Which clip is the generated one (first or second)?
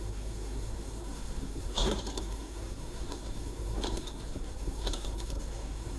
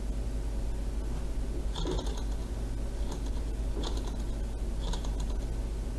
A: first